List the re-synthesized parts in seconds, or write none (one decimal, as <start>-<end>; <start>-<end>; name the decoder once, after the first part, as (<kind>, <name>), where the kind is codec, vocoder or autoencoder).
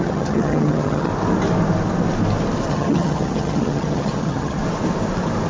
0.0-1.1 (vocoder, HiFi-GAN); 2.7-4.6